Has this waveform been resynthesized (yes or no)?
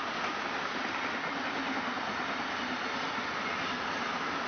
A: no